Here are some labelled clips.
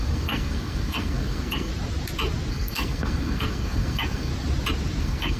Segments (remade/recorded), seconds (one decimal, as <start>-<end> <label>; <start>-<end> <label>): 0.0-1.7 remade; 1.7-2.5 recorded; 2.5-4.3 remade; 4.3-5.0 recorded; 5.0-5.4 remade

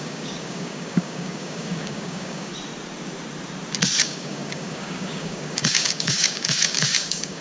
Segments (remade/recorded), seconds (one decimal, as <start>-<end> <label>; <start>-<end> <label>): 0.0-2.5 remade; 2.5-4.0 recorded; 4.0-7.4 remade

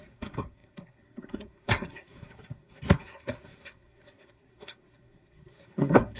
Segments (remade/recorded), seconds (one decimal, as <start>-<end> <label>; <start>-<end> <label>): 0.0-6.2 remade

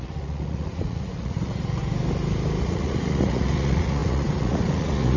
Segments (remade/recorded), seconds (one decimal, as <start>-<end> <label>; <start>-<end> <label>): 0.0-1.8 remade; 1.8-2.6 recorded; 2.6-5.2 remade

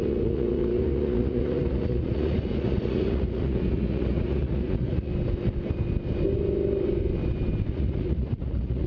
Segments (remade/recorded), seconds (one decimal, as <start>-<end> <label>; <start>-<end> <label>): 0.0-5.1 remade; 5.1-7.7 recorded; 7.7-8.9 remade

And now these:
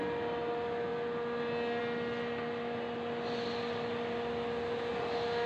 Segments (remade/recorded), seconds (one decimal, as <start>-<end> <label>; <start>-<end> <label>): 0.0-5.5 recorded

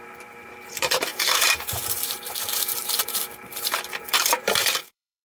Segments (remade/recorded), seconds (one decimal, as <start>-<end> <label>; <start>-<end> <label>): 0.0-5.2 remade

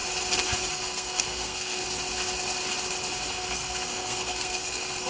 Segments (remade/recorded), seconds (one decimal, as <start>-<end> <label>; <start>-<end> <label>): 0.0-0.7 recorded; 0.7-1.8 remade; 1.8-3.3 recorded; 3.3-5.1 remade